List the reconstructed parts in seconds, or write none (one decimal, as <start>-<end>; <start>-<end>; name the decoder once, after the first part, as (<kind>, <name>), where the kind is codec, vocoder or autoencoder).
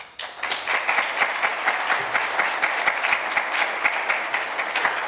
none